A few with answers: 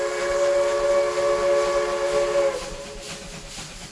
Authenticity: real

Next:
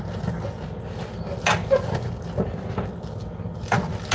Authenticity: real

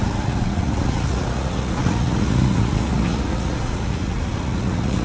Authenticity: fake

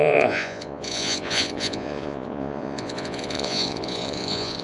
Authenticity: fake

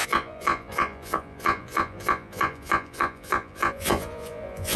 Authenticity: fake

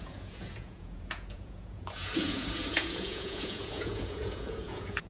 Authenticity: fake